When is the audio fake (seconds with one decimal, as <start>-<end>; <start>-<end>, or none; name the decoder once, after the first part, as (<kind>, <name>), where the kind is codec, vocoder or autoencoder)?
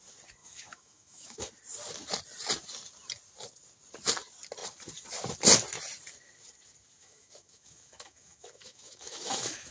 0.4-1.5 (autoencoder, DAC-VAE); 7.0-9.7